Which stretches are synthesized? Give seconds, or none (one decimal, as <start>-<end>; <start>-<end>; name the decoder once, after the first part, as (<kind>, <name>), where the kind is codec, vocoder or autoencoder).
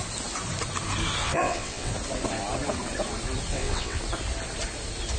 1.2-1.9 (vocoder, WaveNeXt); 3.5-4.0